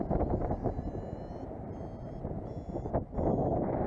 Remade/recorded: recorded